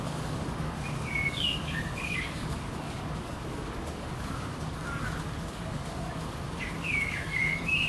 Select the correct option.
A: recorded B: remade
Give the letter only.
B